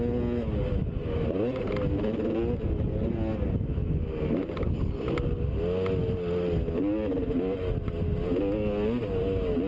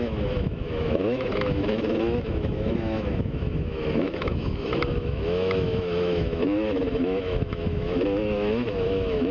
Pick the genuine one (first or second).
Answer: first